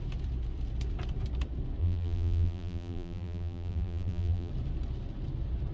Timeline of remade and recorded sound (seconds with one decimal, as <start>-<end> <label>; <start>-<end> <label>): 0.0-1.8 recorded; 1.8-4.5 remade; 4.5-5.7 recorded